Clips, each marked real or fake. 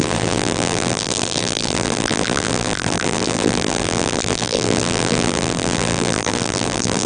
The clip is fake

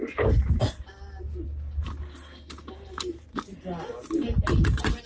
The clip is real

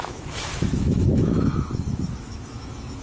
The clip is fake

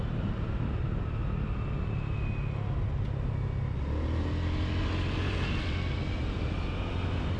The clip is real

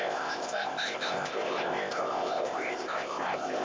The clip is fake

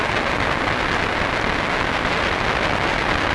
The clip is real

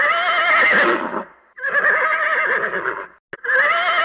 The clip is real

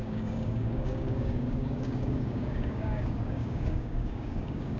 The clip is fake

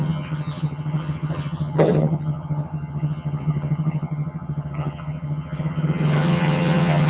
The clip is fake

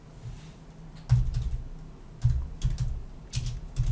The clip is real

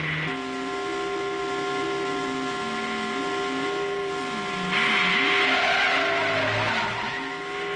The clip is real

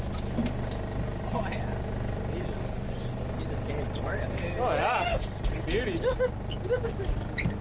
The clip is real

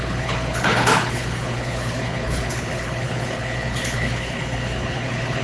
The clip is fake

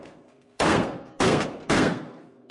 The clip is fake